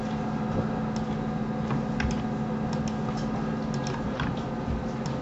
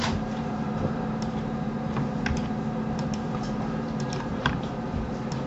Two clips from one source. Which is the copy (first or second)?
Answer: second